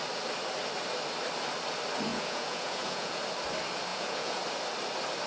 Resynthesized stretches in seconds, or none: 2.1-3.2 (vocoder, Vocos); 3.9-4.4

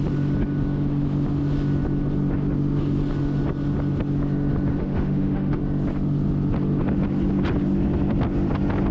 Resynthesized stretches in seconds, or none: 4.8-5.6 (autoencoder, DAC-VAE)